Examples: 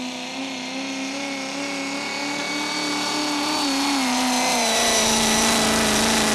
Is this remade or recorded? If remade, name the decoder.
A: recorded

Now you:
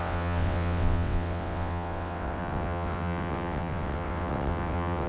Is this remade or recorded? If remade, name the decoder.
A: remade, vocoder, WaveNeXt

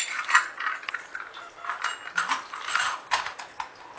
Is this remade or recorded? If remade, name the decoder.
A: recorded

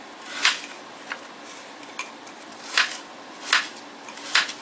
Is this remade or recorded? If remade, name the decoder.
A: recorded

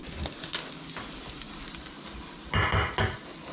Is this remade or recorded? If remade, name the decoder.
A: recorded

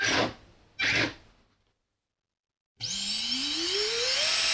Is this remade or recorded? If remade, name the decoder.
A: recorded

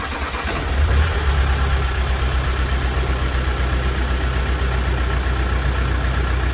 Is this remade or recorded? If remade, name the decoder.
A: recorded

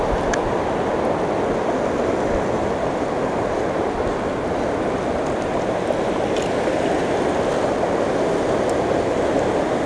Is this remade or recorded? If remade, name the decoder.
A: recorded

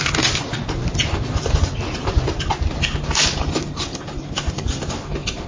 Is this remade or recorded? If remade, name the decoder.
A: recorded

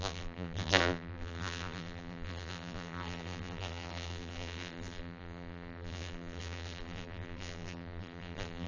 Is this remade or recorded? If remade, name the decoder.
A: remade, vocoder, BigVGAN v2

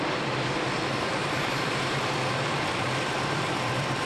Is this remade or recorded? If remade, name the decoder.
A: remade, vocoder, BigVGAN v2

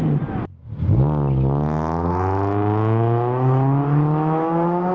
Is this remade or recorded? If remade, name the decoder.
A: recorded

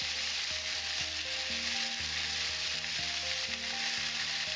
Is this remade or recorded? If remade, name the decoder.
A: recorded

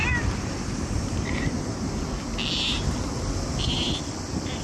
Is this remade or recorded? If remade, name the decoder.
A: recorded